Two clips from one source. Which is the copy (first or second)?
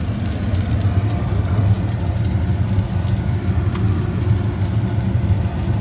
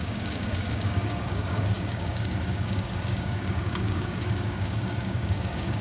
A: second